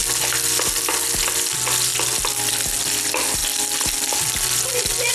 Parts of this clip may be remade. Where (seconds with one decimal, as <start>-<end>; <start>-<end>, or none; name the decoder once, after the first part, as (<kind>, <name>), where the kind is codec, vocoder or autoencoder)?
none